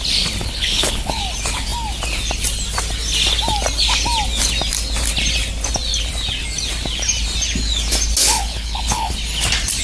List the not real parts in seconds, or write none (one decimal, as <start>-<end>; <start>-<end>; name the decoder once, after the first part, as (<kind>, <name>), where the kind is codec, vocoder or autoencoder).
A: 0.4-1.2 (codec, HILCodec); 8.2-9.1